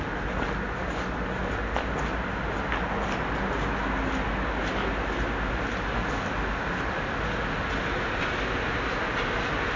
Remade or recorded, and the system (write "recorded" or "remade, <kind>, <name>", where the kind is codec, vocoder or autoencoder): recorded